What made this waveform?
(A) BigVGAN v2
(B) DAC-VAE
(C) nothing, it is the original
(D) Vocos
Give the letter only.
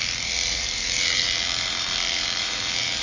A